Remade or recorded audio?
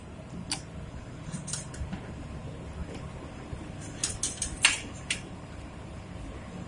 recorded